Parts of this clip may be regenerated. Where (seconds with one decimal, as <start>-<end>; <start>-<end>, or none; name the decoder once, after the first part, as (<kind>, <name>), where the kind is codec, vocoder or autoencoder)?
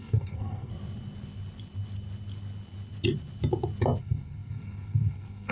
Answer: 0.0-0.7 (codec, SNAC); 4.0-5.5